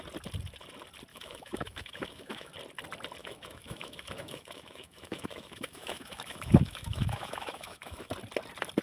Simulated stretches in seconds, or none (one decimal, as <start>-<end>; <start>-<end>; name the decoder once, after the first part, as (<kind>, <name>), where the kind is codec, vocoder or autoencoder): 1.1-2.5 (autoencoder, DAC-VAE); 3.2-8.1